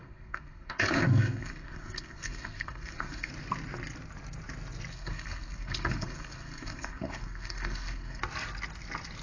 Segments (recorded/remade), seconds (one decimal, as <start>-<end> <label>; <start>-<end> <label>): 0.0-3.3 remade; 3.3-4.9 recorded; 4.9-8.2 remade; 8.2-9.2 recorded